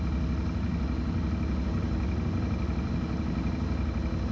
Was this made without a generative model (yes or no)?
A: yes